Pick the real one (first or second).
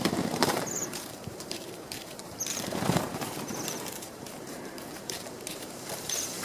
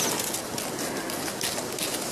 second